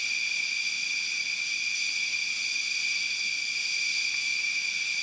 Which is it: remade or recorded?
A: recorded